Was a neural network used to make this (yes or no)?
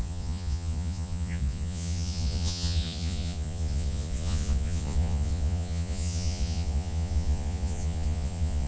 yes